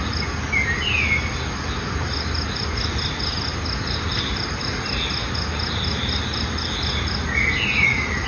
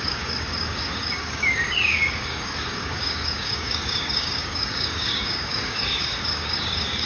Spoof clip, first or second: second